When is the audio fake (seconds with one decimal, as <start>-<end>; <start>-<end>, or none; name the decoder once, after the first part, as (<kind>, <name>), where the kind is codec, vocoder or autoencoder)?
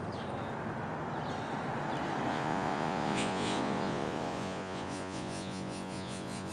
2.3-6.5 (vocoder, Vocos)